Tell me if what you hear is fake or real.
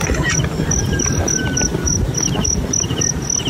real